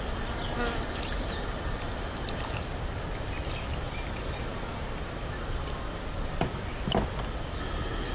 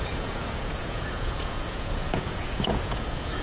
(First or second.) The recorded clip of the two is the first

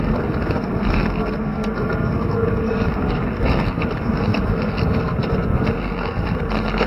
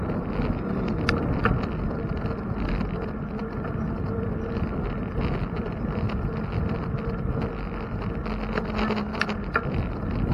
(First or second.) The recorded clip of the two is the second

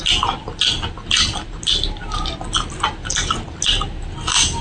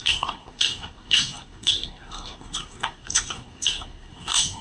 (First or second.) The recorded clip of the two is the first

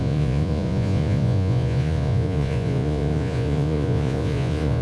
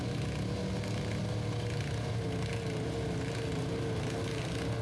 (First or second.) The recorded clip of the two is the second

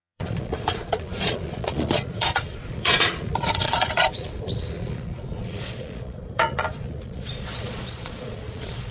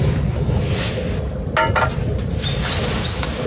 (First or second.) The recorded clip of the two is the second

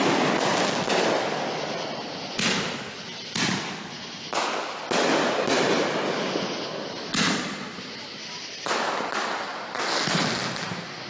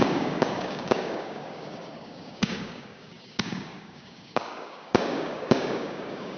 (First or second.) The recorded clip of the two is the first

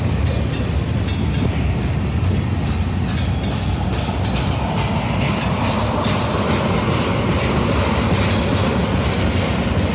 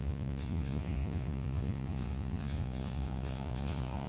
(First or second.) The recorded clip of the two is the first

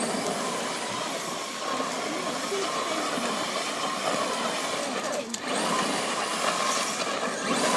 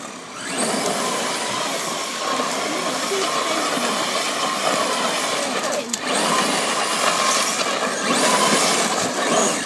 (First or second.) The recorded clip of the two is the second